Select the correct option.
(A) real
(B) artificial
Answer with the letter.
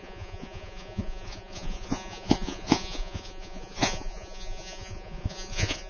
B